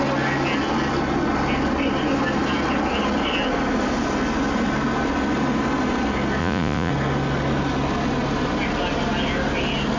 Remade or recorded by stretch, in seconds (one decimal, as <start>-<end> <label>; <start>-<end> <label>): 0.0-6.4 recorded; 6.4-6.9 remade; 6.9-10.0 recorded